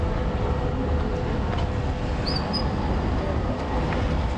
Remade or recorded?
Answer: recorded